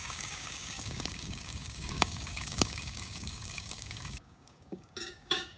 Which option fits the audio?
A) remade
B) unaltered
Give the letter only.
A